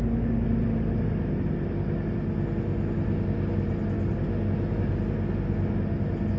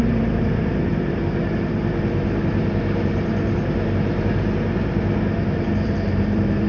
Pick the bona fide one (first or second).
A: first